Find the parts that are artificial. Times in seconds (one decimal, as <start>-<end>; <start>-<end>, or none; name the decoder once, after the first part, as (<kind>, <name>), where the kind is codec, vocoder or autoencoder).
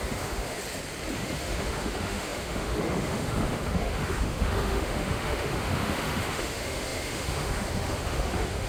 0.0-0.6 (autoencoder, DAC-VAE); 1.1-8.7